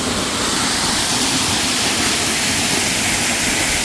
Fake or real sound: real